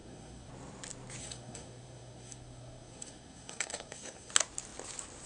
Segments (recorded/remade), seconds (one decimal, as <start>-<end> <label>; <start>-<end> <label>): 0.0-0.5 remade; 0.5-1.2 recorded; 1.2-4.3 remade; 4.3-5.3 recorded